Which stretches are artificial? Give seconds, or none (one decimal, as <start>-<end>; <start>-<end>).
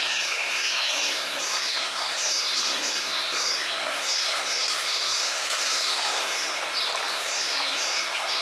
0.0-6.6; 7.1-8.4